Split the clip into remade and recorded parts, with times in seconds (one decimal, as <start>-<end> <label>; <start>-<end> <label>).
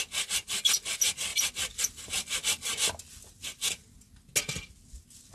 0.0-5.3 recorded